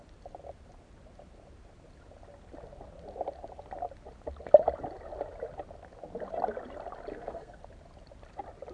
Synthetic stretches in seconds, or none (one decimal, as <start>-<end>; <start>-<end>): 7.1-7.6